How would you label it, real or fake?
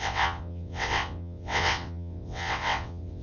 fake